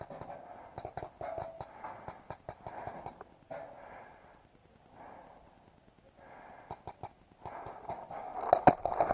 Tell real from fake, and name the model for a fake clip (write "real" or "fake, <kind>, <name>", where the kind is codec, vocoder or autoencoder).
real